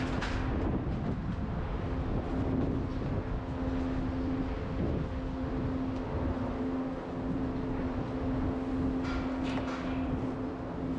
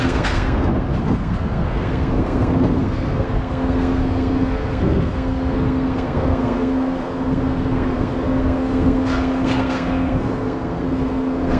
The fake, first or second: second